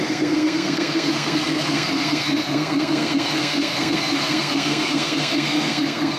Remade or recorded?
remade